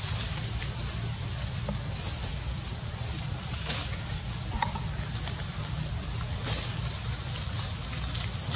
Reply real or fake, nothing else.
real